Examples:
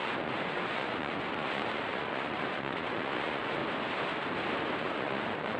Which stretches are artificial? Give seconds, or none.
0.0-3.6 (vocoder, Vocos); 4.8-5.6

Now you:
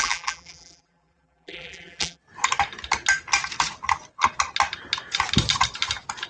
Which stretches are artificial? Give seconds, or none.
0.0-2.2 (vocoder, BigVGAN v2)

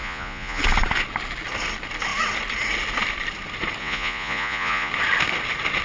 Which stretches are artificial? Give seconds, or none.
0.0-0.6 (vocoder, Vocos); 3.8-4.9

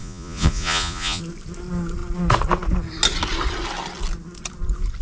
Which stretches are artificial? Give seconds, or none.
0.0-1.2 (vocoder, Vocos)